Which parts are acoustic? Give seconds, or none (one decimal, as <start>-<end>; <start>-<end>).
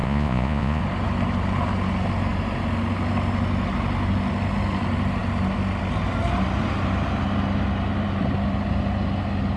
0.8-9.6